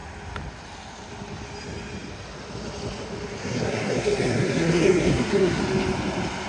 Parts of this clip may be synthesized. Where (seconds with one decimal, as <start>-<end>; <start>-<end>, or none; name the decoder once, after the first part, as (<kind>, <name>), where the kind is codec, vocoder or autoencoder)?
3.4-5.6 (codec, SNAC)

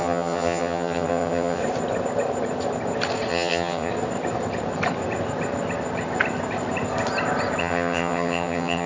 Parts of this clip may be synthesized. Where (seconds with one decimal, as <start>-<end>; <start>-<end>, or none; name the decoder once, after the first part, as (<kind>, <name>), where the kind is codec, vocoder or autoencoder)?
0.0-1.6 (vocoder, HiFi-GAN); 3.3-3.9; 7.6-8.9

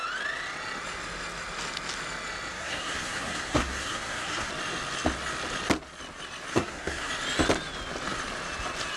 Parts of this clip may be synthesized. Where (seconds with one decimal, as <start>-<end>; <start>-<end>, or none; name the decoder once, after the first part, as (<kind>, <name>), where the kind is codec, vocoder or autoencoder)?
2.5-4.5 (codec, SNAC); 6.5-7.1

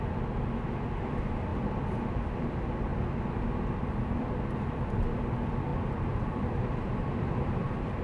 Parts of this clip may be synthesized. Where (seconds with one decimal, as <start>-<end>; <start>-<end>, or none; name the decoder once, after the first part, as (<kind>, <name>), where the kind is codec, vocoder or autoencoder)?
0.0-1.5 (vocoder, BigVGAN v2); 2.1-2.9; 3.6-8.0